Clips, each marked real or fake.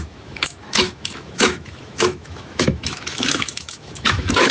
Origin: fake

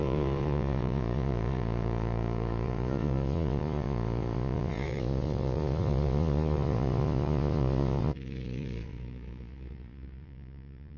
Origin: fake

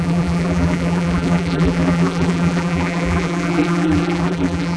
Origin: fake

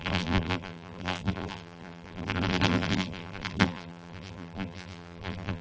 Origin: fake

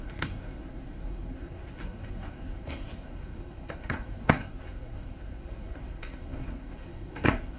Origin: fake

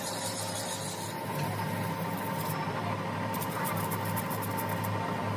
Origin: real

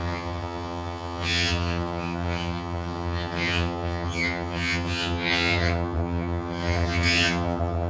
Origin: fake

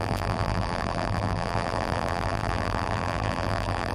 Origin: fake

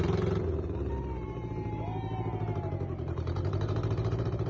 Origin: fake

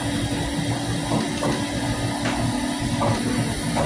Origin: real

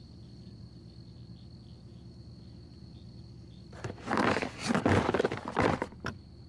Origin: real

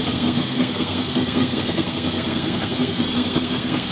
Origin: fake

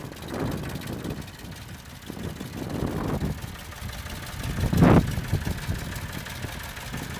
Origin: real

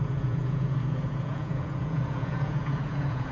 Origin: fake